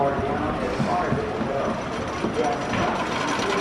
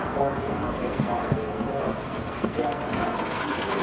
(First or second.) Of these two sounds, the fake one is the second